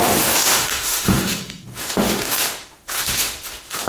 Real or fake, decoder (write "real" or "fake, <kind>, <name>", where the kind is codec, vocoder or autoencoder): fake, autoencoder, DAC-VAE